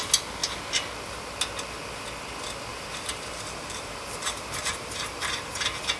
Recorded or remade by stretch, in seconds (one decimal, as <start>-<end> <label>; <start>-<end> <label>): 0.0-2.7 recorded; 2.7-6.0 remade